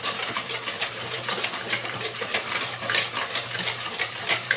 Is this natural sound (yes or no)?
no